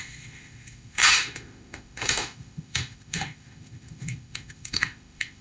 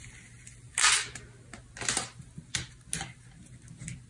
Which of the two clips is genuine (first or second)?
second